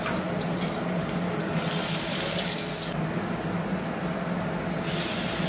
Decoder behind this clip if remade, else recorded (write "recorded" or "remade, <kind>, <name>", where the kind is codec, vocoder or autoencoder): recorded